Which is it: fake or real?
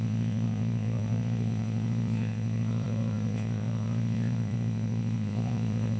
fake